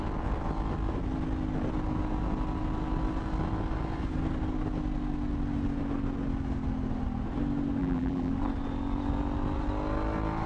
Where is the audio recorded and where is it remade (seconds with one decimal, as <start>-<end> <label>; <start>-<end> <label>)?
0.0-7.8 recorded; 7.8-8.3 remade; 8.3-10.5 recorded